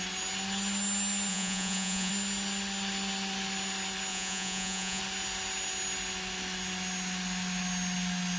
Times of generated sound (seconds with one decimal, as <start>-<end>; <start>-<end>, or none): 1.3-2.1; 4.1-5.0